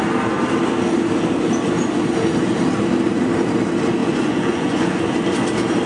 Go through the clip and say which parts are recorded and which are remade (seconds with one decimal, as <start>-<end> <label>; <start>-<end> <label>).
0.0-4.0 recorded; 4.0-5.0 remade; 5.0-5.9 recorded